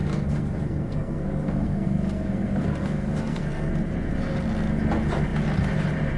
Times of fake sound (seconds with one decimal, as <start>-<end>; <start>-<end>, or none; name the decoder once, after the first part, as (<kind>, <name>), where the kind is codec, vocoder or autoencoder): 0.0-3.7 (codec, SNAC)